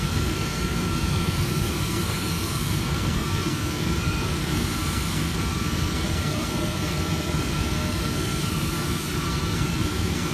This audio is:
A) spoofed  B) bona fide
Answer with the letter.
A